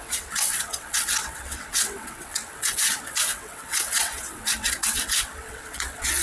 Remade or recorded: remade